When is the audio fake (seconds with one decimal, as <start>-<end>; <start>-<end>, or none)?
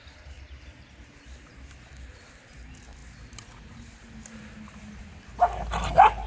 none